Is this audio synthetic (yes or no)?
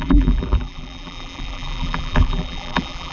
yes